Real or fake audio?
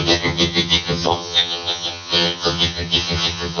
fake